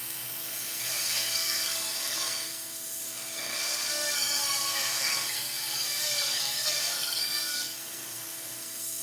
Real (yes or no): no